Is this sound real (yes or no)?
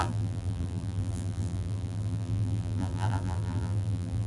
no